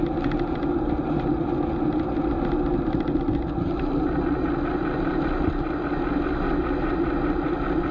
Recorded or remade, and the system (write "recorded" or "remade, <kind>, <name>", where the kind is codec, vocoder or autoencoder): recorded